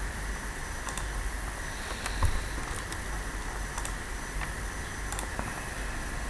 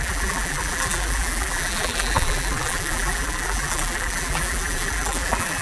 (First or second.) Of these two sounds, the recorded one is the first